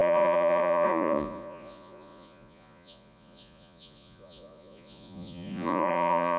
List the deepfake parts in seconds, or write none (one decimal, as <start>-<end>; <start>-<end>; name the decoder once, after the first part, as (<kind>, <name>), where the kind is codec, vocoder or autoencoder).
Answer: 0.0-6.4 (vocoder, Vocos)